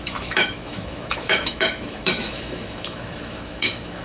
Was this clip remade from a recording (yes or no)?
yes